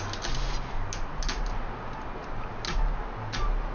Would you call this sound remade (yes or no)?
no